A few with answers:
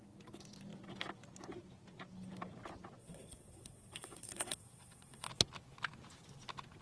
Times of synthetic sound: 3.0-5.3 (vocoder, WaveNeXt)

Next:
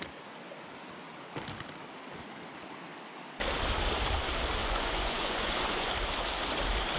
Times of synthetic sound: 4.6-5.9 (vocoder, Vocos)

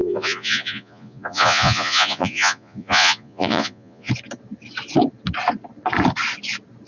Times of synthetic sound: 0.0-4.1 (vocoder, Vocos)